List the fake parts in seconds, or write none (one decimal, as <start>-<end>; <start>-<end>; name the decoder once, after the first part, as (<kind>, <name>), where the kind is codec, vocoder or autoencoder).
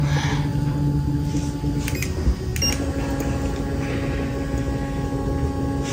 none